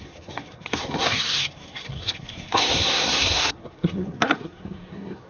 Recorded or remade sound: remade